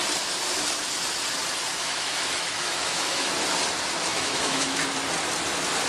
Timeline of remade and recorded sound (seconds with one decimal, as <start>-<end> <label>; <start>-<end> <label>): 0.0-1.8 recorded; 1.8-3.3 remade; 3.3-4.1 recorded; 4.1-4.8 remade; 4.8-5.9 recorded